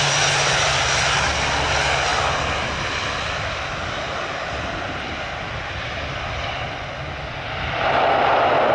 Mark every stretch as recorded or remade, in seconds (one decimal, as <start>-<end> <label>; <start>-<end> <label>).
0.0-8.7 recorded